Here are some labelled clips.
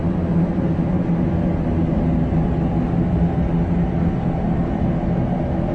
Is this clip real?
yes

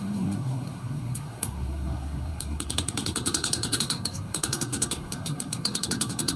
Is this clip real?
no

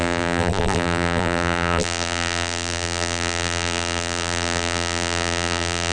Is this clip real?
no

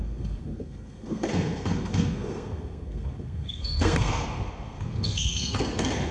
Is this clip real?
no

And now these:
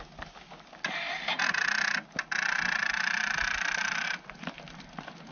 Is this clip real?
yes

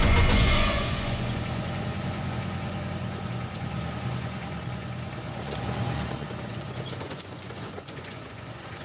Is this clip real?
no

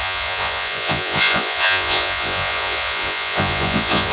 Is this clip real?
no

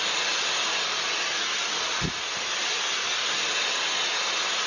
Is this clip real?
yes